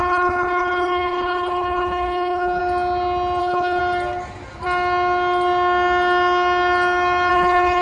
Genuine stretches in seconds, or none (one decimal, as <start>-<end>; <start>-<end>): 2.6-3.4; 3.8-7.3